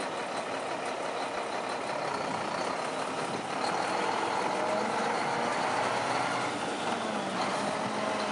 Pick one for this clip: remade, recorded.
recorded